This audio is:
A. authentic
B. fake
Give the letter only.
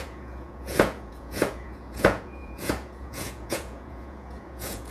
B